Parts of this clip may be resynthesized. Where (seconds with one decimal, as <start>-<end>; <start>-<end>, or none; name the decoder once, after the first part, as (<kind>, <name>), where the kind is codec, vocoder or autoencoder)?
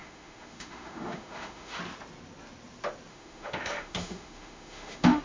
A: 0.0-1.8 (autoencoder, DAC-VAE); 3.1-5.2